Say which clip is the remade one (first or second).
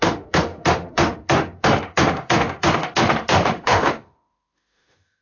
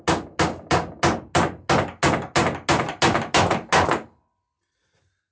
first